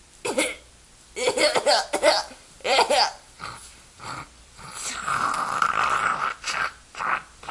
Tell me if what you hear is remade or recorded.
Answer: remade